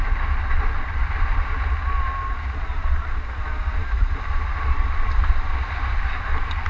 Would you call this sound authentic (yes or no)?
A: yes